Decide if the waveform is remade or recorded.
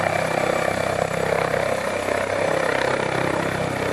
recorded